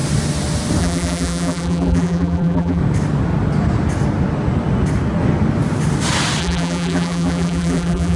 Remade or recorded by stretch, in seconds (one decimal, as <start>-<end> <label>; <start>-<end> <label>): 0.0-0.8 recorded; 0.8-2.8 remade; 2.8-6.4 recorded; 6.4-8.2 remade